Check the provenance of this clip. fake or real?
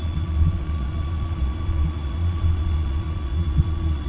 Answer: fake